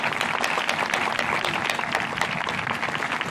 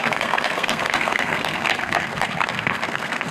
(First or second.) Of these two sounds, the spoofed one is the second